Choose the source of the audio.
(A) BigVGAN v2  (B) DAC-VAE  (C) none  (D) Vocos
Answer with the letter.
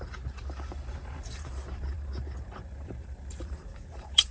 A